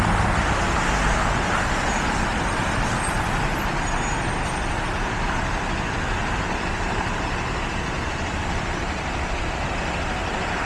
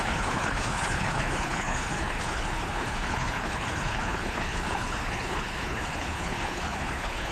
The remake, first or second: second